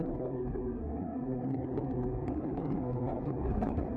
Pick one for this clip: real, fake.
fake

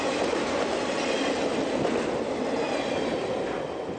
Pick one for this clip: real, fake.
real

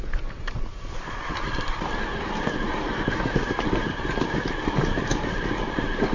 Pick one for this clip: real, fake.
real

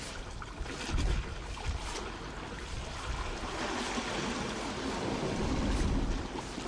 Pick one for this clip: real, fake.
real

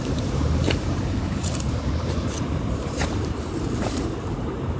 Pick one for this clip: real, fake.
fake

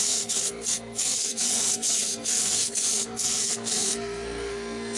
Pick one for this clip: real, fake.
fake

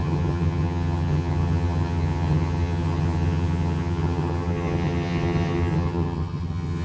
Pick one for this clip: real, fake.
fake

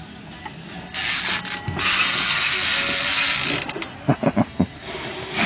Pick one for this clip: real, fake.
real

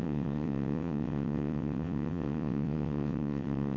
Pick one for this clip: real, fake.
fake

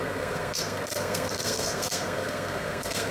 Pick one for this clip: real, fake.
fake